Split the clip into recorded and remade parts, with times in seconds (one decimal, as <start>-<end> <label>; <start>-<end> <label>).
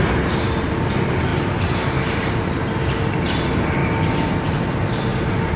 0.0-1.3 recorded; 1.3-2.5 remade; 2.5-3.8 recorded; 3.8-4.4 remade; 4.4-5.6 recorded